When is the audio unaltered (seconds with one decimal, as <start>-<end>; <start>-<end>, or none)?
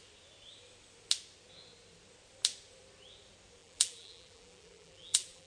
0.0-3.6